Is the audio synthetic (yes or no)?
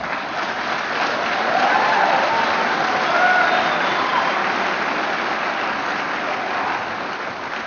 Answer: no